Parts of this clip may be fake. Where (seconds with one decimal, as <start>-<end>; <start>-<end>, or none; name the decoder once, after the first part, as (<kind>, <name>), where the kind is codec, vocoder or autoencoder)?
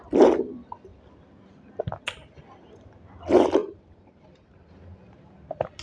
3.6-4.7 (vocoder, BigVGAN v2)